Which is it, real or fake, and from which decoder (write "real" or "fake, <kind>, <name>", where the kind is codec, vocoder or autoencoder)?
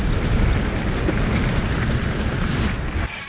real